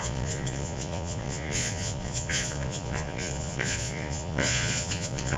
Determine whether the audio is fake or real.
fake